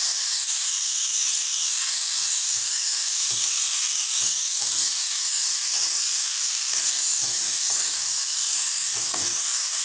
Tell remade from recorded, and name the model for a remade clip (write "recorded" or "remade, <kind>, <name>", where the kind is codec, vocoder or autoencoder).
remade, codec, DAC